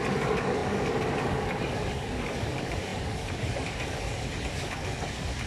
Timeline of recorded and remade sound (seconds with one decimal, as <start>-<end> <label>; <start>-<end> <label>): 0.0-5.5 remade